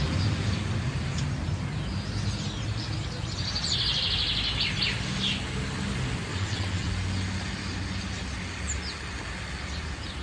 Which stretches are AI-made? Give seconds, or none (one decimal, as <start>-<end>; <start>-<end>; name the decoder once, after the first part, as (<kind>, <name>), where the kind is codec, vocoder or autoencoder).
6.3-6.9 (vocoder, WaveNeXt)